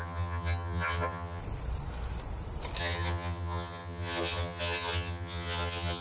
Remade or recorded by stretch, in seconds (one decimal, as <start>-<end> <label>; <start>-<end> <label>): 0.0-1.4 remade; 1.4-2.8 recorded; 2.8-6.0 remade

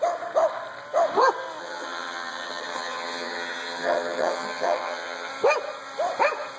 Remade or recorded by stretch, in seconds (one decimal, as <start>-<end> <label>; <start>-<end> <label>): 0.0-1.6 recorded; 1.6-5.3 remade; 5.3-6.6 recorded

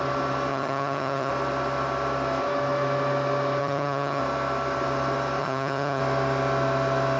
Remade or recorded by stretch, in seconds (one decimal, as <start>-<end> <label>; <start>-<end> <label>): 0.0-0.5 recorded; 0.5-1.3 remade; 1.3-3.6 recorded; 3.6-4.2 remade; 4.2-5.4 recorded; 5.4-6.0 remade; 6.0-7.2 recorded